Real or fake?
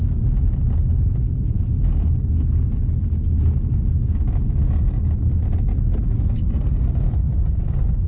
real